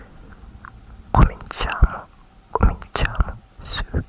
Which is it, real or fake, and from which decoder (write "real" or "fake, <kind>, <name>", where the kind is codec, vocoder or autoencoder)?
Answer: real